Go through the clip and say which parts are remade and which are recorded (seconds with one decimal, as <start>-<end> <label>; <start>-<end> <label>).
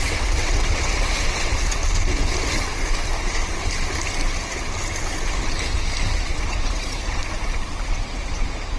0.0-1.8 remade; 1.8-6.1 recorded; 6.1-7.2 remade; 7.2-7.9 recorded; 7.9-8.8 remade